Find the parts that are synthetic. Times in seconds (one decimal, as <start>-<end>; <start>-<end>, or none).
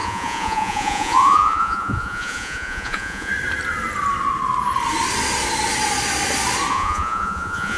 0.0-3.3; 6.7-7.8